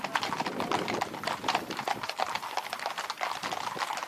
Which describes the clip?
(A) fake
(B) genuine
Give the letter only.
A